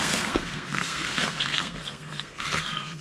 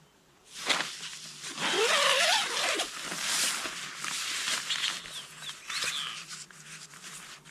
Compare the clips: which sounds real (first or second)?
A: second